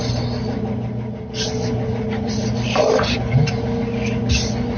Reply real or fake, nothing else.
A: real